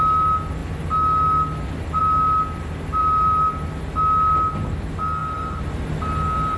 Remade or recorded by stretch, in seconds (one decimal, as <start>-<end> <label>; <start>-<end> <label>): 0.0-3.0 recorded; 3.0-3.8 remade; 3.8-5.2 recorded; 5.2-5.7 remade; 5.7-6.6 recorded